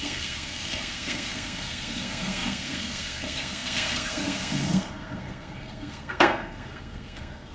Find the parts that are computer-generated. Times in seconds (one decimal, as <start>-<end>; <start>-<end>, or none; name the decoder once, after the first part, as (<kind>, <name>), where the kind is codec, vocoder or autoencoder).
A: 0.0-7.5 (codec, SNAC)